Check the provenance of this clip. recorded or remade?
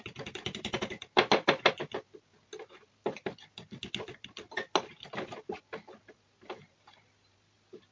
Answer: recorded